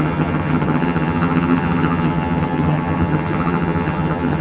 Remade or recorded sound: remade